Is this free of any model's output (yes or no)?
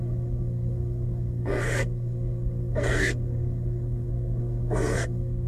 no